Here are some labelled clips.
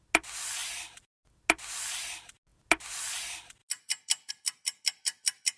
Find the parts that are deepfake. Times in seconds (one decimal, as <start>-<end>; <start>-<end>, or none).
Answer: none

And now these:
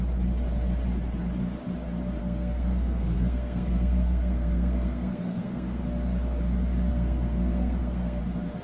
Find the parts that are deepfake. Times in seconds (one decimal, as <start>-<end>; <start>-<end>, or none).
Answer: 2.2-5.8; 6.9-8.2

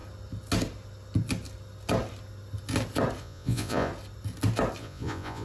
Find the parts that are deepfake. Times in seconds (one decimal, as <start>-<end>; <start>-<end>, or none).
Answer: 3.2-3.9; 4.8-5.4

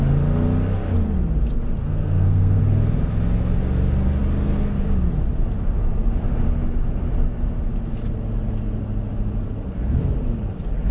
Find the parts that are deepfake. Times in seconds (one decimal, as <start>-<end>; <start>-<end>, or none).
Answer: 1.8-2.6

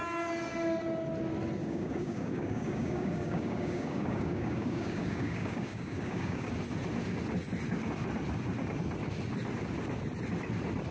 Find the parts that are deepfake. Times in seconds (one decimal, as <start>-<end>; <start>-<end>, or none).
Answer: 1.6-6.5

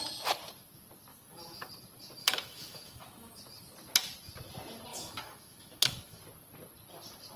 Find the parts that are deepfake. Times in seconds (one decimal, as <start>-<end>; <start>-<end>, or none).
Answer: 1.1-1.7; 2.2-3.4; 4.9-6.2